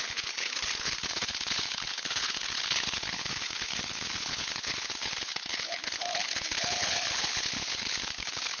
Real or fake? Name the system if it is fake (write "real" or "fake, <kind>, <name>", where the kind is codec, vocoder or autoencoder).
fake, codec, HILCodec